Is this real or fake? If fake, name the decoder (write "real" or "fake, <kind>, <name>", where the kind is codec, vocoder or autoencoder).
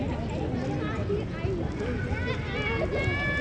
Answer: real